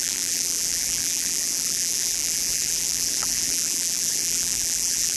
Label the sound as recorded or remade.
remade